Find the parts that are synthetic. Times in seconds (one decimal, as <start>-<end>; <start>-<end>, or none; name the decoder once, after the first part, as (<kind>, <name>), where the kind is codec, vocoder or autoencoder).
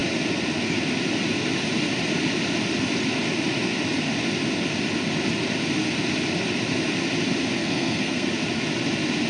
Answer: 7.6-8.3 (codec, SNAC)